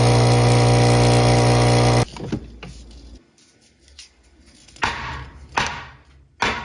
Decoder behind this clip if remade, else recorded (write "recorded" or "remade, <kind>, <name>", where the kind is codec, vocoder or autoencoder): recorded